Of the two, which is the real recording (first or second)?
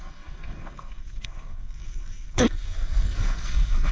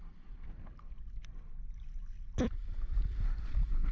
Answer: second